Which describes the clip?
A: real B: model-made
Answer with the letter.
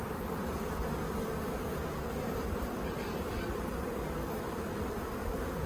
A